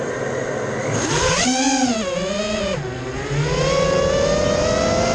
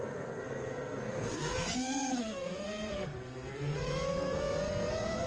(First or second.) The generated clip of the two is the second